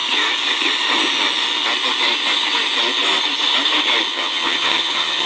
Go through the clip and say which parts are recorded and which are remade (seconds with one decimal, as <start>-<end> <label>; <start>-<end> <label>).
0.0-4.1 recorded; 4.1-5.3 remade